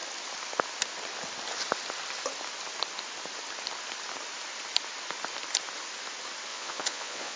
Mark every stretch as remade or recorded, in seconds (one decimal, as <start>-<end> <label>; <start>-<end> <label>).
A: 0.0-6.5 recorded; 6.5-7.4 remade